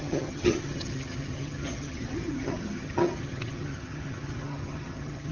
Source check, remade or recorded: remade